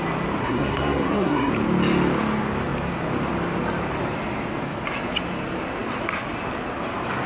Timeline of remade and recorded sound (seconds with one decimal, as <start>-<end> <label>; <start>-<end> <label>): 0.0-0.4 recorded; 0.4-1.5 remade; 1.5-7.3 recorded

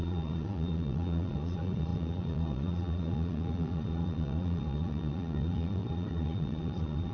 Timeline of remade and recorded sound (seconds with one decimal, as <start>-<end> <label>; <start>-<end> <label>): 0.0-7.1 remade

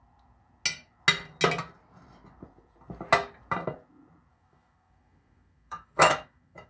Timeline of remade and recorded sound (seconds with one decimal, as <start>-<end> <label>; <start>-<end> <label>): 0.0-4.3 recorded; 4.3-6.7 remade

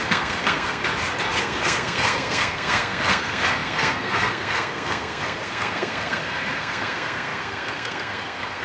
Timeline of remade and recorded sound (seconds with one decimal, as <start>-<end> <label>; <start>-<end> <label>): 0.0-0.8 remade; 0.8-1.4 recorded; 1.4-8.6 remade

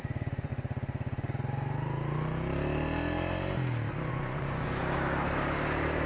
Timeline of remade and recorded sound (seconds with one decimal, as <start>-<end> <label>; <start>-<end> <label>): 0.0-0.5 remade; 0.5-4.1 recorded; 4.1-4.8 remade; 4.8-6.1 recorded

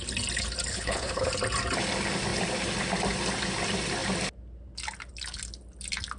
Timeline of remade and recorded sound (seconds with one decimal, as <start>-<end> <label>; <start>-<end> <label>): 0.0-0.7 recorded; 0.7-1.3 remade; 1.3-6.2 recorded

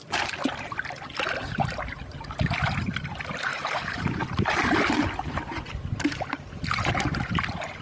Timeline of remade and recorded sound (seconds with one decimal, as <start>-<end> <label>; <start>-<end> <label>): 0.0-3.5 recorded; 3.5-6.9 remade; 6.9-7.8 recorded

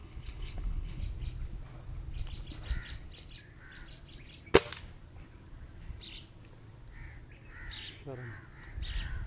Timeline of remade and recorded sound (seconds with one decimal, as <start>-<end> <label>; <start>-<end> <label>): 0.0-1.0 remade; 1.0-9.3 recorded